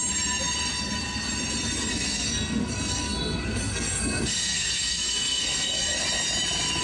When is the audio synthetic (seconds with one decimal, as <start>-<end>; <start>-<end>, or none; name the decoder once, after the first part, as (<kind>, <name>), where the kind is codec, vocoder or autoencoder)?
1.9-6.0 (codec, SNAC)